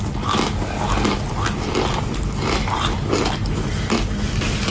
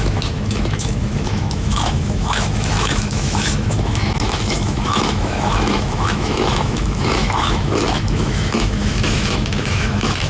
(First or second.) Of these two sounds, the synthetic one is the second